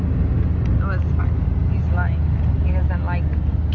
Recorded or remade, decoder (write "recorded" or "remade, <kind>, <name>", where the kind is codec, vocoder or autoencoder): recorded